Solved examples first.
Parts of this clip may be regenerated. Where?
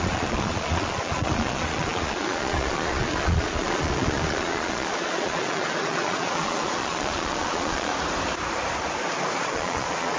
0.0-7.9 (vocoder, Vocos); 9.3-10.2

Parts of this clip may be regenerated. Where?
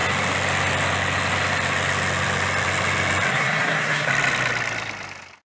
3.3-4.1 (codec, SNAC)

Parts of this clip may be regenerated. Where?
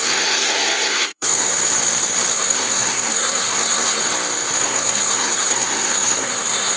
0.0-1.5 (codec, SNAC); 2.3-4.0; 4.6-6.8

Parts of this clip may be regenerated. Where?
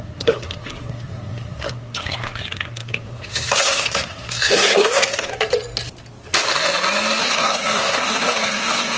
0.0-5.3 (codec, SNAC); 7.2-9.0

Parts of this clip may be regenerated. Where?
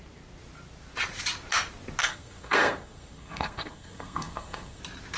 2.0-4.8 (codec, SNAC)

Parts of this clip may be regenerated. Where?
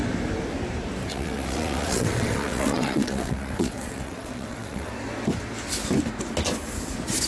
1.1-4.9 (vocoder, WaveNeXt)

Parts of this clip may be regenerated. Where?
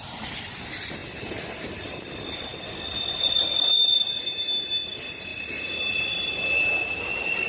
none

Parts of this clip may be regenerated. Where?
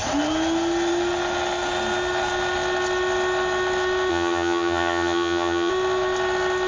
4.1-5.7 (vocoder, HiFi-GAN)